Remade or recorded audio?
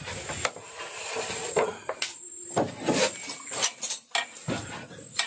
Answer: recorded